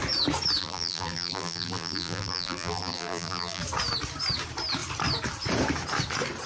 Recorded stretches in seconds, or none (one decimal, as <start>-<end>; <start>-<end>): 0.0-0.6; 3.6-6.5